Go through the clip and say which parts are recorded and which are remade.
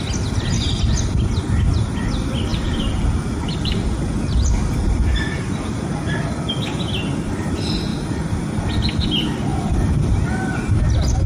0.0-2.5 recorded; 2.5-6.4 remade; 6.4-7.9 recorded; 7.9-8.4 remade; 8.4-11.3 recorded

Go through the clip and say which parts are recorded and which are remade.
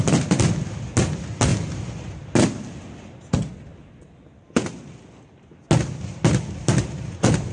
0.0-7.5 recorded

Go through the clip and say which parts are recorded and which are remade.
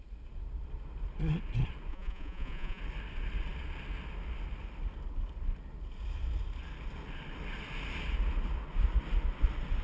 0.0-1.9 recorded; 1.9-2.8 remade; 2.8-9.8 recorded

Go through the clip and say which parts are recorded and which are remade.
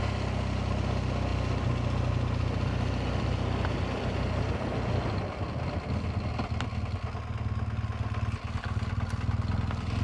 0.0-10.0 recorded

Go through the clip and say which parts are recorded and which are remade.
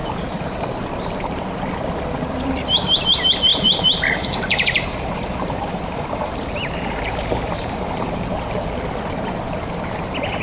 0.0-3.5 recorded; 3.5-8.3 remade; 8.3-10.4 recorded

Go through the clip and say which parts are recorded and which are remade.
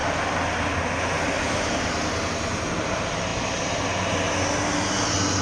0.0-5.4 recorded